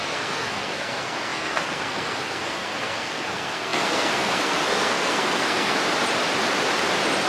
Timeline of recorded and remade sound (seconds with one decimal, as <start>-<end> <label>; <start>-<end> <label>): 0.0-5.8 remade; 5.8-7.3 recorded